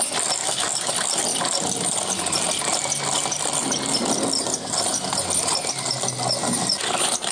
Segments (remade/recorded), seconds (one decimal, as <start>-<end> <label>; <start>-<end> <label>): 0.0-0.4 recorded; 0.4-0.9 remade; 0.9-7.3 recorded